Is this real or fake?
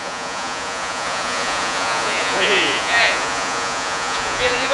fake